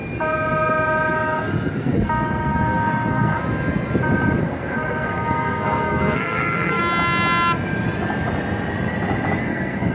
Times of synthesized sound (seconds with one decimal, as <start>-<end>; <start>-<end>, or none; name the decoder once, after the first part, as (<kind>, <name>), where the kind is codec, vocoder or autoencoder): 1.7-3.4 (codec, SNAC); 4.4-6.8; 9.4-9.9